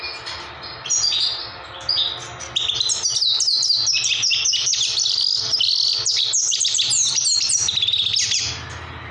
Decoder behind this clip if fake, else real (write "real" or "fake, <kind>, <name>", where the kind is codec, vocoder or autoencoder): real